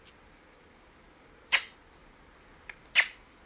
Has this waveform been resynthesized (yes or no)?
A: no